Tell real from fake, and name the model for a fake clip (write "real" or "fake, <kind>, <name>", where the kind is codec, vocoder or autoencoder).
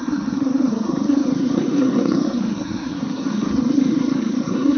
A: fake, codec, SNAC